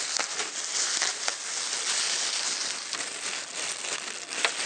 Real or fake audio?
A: real